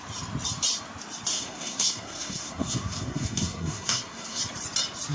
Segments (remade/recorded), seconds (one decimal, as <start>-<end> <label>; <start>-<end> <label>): 0.0-1.3 recorded; 1.3-4.4 remade; 4.4-5.1 recorded